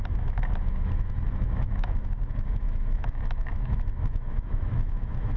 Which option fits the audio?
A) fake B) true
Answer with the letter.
A